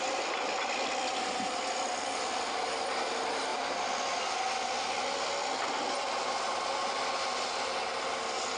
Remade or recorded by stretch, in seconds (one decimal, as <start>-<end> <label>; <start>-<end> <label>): 0.0-8.6 recorded